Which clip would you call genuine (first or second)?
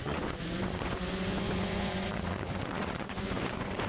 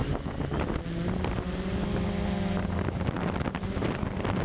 second